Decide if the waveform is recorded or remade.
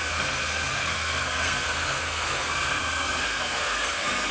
remade